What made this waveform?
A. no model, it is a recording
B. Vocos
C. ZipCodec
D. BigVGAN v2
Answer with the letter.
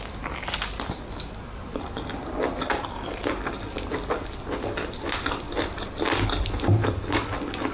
A